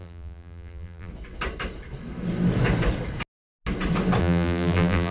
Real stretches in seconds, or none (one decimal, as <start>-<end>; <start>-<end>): 1.1-4.2